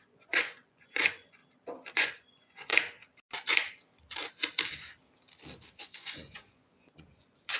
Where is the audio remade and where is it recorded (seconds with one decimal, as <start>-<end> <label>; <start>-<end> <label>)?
0.0-1.4 remade; 1.4-1.9 recorded; 1.9-2.7 remade; 2.7-5.8 recorded; 5.8-7.6 remade